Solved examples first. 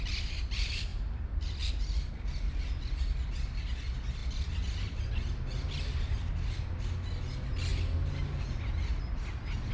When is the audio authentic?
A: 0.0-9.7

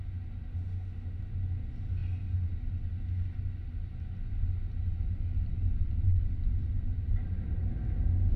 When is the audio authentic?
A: 0.0-0.6; 1.2-8.4

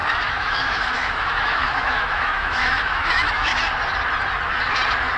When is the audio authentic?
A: 3.5-5.2

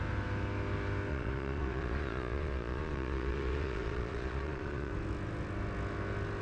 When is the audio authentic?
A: 0.0-1.1; 4.9-6.4

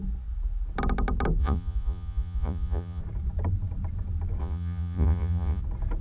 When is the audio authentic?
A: 0.0-1.4; 3.0-4.4; 5.6-6.0